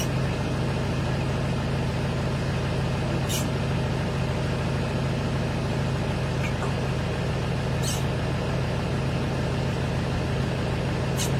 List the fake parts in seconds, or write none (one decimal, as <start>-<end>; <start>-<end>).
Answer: none